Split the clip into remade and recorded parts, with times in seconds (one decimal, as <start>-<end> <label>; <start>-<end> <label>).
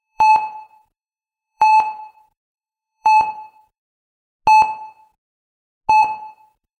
0.0-3.8 remade; 3.8-5.9 recorded; 5.9-6.8 remade